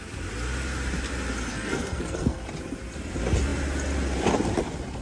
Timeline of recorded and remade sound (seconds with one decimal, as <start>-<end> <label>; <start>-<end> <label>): 0.0-1.5 recorded; 1.5-2.4 remade; 2.4-5.0 recorded